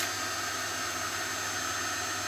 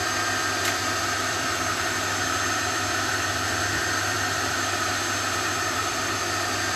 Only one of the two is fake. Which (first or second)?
second